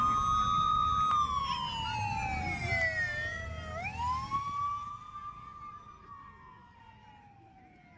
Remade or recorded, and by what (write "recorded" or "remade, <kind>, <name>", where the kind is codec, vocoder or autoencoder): recorded